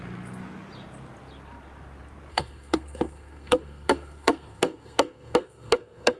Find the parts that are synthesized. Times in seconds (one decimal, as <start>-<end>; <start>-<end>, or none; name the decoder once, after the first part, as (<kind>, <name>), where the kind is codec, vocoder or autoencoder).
2.3-6.2 (codec, SNAC)